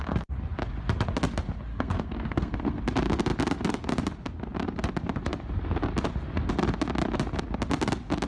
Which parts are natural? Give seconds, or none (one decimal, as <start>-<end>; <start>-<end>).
0.0-1.7; 2.8-8.3